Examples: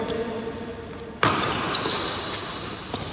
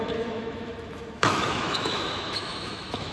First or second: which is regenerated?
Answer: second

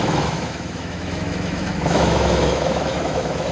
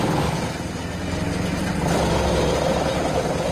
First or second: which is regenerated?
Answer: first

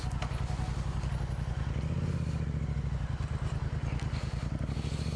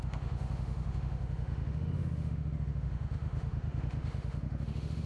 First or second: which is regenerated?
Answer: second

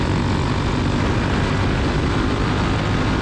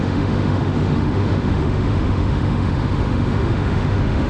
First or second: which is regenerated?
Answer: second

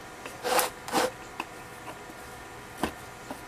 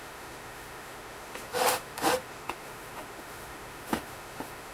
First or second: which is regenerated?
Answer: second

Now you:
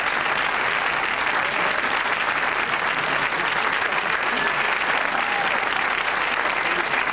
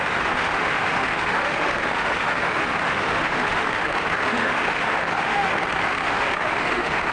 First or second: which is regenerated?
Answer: second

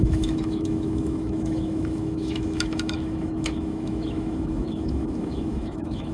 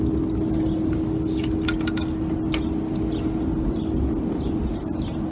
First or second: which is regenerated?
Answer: first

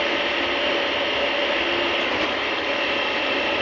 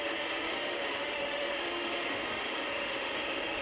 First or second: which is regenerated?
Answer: second